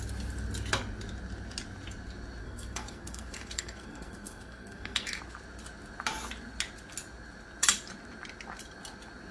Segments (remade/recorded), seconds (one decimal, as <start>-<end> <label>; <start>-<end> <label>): 0.0-2.4 recorded; 2.4-5.2 remade; 5.2-9.3 recorded